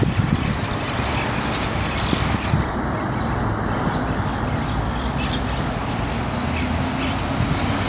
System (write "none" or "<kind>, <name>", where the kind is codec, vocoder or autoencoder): none